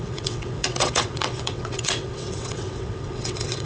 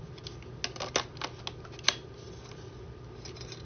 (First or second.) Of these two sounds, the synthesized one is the first